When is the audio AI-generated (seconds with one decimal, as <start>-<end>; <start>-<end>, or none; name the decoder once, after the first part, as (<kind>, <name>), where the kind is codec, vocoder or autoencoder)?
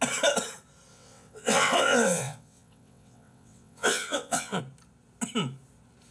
0.9-4.6 (vocoder, WaveNeXt)